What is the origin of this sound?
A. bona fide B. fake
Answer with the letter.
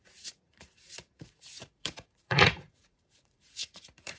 B